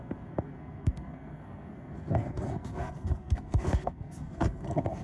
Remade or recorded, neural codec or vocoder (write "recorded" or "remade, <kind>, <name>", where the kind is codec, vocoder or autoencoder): remade, codec, SNAC